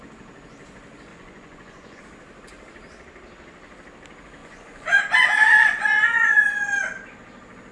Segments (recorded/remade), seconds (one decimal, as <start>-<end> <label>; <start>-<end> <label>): 0.0-1.1 recorded; 1.1-2.0 remade; 2.0-4.4 recorded; 4.4-5.0 remade; 5.0-5.6 recorded; 5.6-6.7 remade; 6.7-7.7 recorded